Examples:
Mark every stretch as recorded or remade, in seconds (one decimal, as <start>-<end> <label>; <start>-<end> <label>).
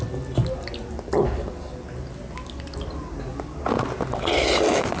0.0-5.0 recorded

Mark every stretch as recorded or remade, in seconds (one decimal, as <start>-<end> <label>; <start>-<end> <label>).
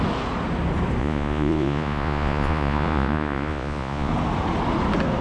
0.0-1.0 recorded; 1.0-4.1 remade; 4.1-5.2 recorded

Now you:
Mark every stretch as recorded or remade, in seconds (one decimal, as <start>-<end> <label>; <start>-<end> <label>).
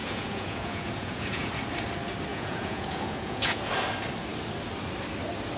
0.0-1.5 remade; 1.5-2.3 recorded; 2.3-3.7 remade; 3.7-5.6 recorded